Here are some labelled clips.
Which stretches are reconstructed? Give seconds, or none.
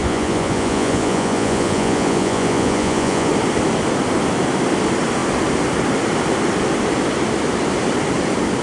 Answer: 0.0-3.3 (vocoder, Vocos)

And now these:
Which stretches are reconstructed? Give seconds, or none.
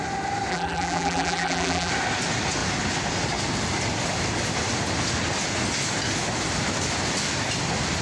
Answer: 0.5-1.9 (vocoder, BigVGAN v2)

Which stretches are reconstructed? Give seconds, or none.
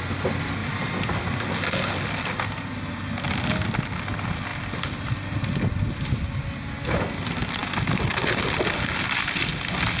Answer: 0.6-1.3 (vocoder, BigVGAN v2)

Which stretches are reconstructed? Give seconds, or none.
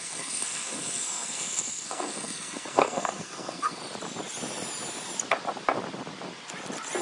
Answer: 0.0-3.8 (codec, SNAC)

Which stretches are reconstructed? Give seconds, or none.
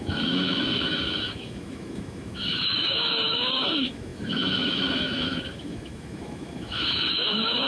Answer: 0.0-7.7 (autoencoder, DAC-VAE)